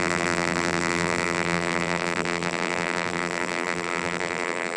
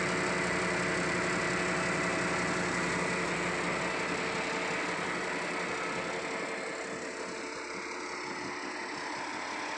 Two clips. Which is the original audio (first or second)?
second